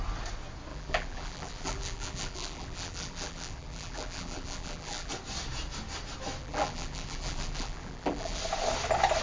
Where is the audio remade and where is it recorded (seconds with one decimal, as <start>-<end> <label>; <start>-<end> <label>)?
0.0-0.7 recorded; 0.7-5.1 remade; 5.1-6.4 recorded; 6.4-8.4 remade; 8.4-9.2 recorded